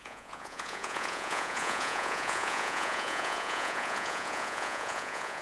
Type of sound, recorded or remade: remade